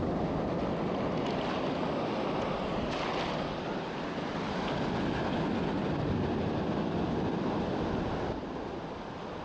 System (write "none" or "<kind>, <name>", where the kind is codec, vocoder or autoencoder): none